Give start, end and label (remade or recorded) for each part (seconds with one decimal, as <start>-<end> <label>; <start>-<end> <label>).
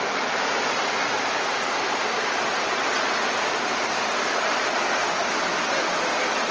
0.0-6.5 recorded